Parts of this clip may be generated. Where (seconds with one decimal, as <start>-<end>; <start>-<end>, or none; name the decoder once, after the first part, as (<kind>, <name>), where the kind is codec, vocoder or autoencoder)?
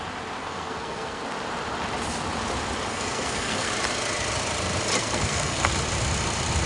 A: 0.4-1.2 (codec, SNAC); 2.9-3.7; 5.0-5.7